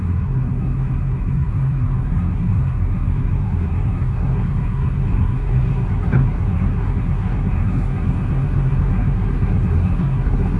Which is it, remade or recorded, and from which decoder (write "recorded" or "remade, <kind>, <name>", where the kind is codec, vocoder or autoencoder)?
remade, codec, SNAC